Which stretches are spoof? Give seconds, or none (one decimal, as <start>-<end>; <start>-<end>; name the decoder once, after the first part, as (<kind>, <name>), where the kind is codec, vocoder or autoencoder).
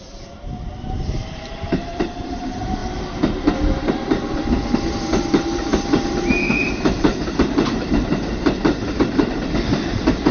0.0-2.8 (vocoder, BigVGAN v2); 3.8-10.3